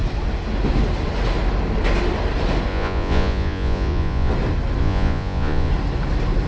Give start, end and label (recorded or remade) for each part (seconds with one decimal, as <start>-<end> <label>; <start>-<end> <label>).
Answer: 0.0-2.7 recorded; 2.7-4.3 remade; 4.3-4.8 recorded; 4.8-5.7 remade; 5.7-6.5 recorded

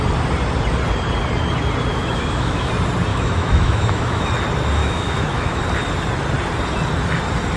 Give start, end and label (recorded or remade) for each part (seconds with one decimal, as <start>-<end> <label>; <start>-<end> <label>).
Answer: 0.0-1.9 recorded; 1.9-2.7 remade; 2.7-3.1 recorded; 3.1-4.3 remade; 4.3-4.8 recorded; 4.8-5.6 remade; 5.6-7.6 recorded